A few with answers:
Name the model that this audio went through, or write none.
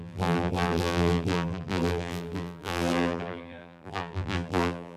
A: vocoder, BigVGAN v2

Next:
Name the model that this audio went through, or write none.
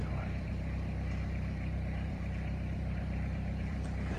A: vocoder, BigVGAN v2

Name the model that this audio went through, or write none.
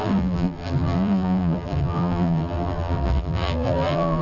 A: vocoder, BigVGAN v2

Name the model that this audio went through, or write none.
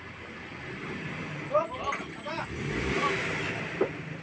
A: vocoder, BigVGAN v2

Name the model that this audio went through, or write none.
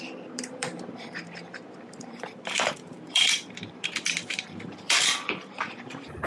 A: vocoder, BigVGAN v2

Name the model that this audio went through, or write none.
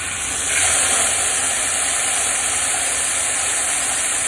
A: none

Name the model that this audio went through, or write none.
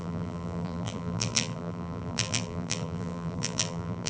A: vocoder, BigVGAN v2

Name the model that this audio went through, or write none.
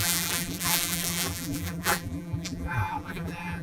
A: vocoder, BigVGAN v2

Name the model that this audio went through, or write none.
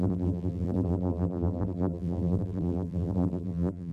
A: vocoder, BigVGAN v2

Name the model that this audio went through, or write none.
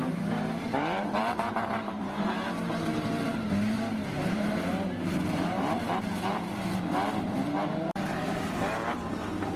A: vocoder, BigVGAN v2